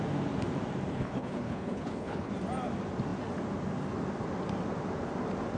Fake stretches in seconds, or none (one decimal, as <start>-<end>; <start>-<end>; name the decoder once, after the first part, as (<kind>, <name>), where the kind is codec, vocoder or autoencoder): 0.9-2.3 (codec, HILCodec)